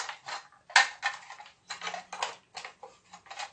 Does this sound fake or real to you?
real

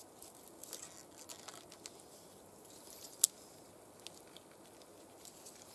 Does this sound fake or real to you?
real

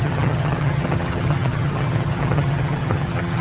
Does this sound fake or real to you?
fake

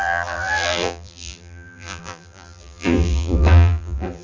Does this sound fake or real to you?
fake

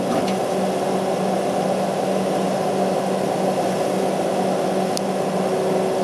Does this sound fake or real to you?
real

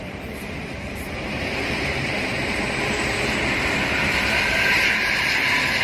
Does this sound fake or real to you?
fake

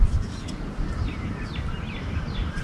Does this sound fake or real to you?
real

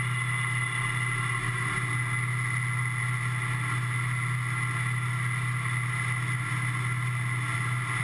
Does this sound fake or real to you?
real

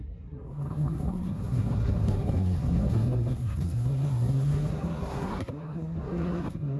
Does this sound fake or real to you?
fake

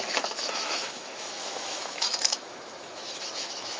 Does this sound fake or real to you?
fake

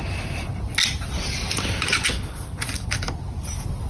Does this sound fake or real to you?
real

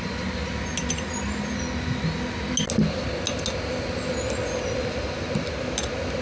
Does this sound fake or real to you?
real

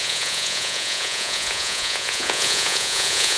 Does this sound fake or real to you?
fake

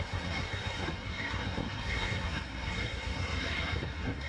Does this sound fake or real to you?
fake